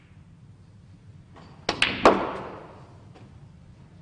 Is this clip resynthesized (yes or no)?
no